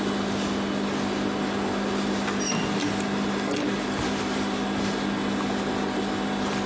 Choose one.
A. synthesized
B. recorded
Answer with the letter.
B